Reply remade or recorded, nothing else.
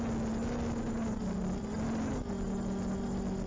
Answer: recorded